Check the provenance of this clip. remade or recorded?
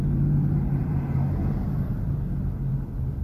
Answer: remade